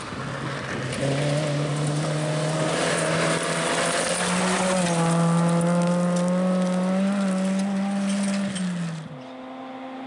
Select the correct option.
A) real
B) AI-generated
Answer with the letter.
A